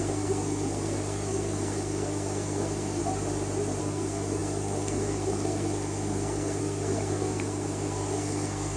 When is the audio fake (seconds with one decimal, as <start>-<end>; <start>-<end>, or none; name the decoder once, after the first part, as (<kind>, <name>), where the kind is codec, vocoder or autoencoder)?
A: 0.0-3.0 (codec, SNAC); 3.8-8.8